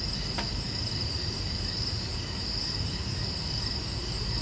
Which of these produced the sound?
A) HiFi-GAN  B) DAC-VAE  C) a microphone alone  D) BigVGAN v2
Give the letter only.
D